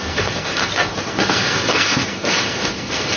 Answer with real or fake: fake